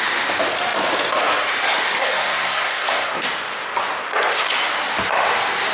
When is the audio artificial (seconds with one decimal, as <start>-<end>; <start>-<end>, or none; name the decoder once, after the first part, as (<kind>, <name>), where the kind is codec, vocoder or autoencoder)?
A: 2.0-3.2 (codec, SNAC)